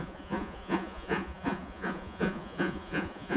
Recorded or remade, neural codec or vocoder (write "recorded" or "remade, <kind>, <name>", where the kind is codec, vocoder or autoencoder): remade, vocoder, Vocos